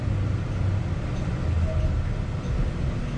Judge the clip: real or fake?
real